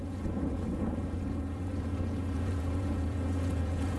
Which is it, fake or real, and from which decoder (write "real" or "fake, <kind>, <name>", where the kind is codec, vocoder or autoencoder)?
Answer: fake, vocoder, Vocos